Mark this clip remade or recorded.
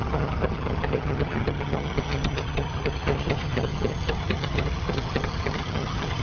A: remade